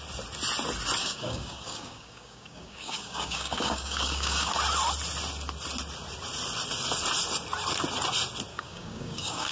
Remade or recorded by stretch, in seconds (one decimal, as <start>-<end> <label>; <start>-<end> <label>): 0.0-1.0 recorded; 1.0-4.5 remade; 4.5-8.5 recorded; 8.5-9.5 remade